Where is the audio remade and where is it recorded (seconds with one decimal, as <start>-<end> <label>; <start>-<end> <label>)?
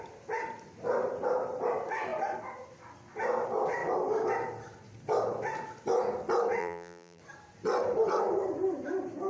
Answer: 0.0-6.6 recorded; 6.6-7.2 remade; 7.2-9.3 recorded